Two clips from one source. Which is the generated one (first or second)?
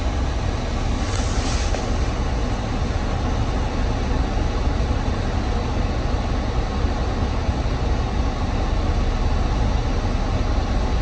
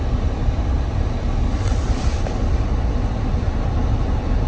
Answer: second